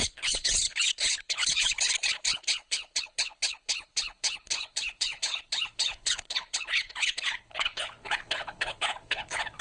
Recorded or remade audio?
remade